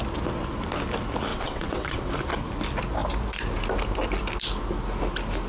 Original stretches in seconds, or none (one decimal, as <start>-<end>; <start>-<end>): 0.0-1.3; 2.1-5.5